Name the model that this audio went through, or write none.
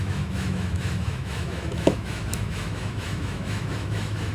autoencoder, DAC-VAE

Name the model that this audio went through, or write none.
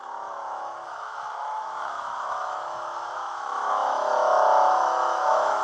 autoencoder, DAC-VAE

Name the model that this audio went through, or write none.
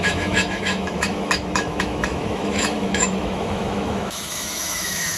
autoencoder, DAC-VAE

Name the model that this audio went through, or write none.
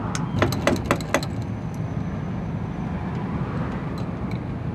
none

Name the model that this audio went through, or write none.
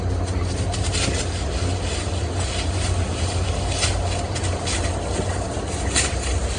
none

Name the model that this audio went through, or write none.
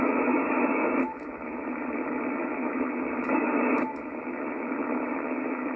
autoencoder, DAC-VAE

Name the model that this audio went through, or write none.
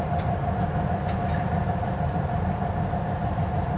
none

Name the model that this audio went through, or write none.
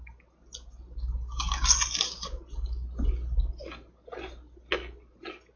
none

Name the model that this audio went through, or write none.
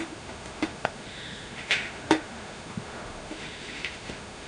autoencoder, DAC-VAE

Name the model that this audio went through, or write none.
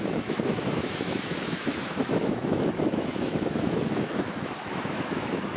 autoencoder, DAC-VAE